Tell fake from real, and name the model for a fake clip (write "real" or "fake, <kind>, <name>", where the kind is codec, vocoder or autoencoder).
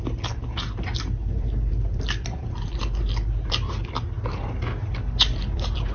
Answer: real